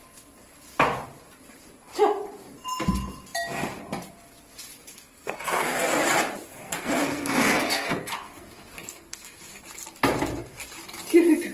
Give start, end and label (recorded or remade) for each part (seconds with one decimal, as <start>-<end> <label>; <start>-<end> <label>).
0.0-4.9 recorded; 4.9-5.8 remade; 5.8-6.5 recorded; 6.5-9.6 remade; 9.6-11.5 recorded